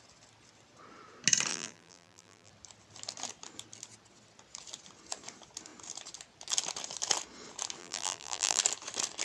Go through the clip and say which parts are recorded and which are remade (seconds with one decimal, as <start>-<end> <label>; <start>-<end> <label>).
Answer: 0.0-1.5 recorded; 1.5-2.5 remade; 2.5-7.8 recorded; 7.8-8.6 remade; 8.6-9.2 recorded